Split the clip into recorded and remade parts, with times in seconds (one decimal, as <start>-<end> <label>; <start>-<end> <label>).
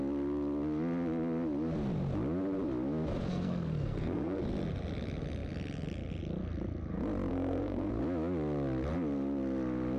0.0-3.3 recorded; 3.3-4.4 remade; 4.4-7.3 recorded; 7.3-7.9 remade; 7.9-10.0 recorded